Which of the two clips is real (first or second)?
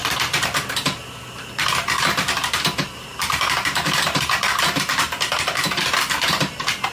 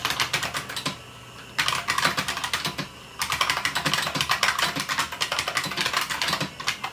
second